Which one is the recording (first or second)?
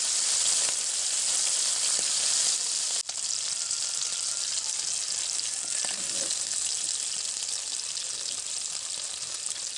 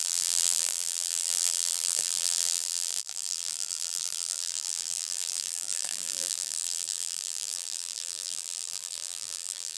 first